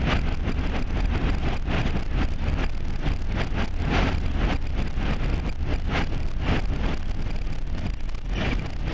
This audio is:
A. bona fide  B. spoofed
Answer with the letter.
A